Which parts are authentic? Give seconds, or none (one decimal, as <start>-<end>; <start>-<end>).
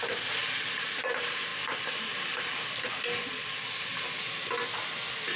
0.0-5.4